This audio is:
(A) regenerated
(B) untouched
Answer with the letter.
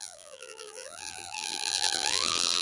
A